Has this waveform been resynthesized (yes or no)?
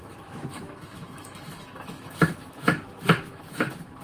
yes